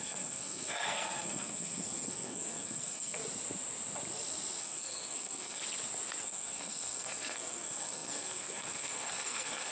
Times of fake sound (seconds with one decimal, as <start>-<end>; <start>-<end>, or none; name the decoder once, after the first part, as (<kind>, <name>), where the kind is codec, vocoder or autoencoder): 0.0-3.2 (codec, SNAC); 4.6-5.6; 6.2-9.7